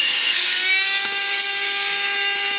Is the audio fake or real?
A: fake